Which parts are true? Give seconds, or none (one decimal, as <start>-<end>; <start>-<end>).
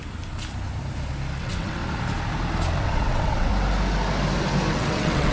0.0-1.4; 1.8-2.8; 3.5-4.7